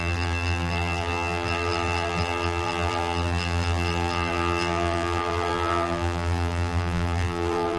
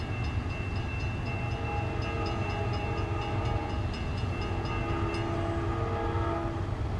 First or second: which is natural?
second